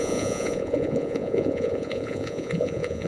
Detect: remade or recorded remade